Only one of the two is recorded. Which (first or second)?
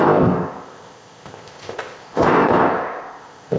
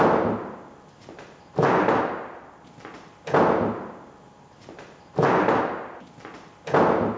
second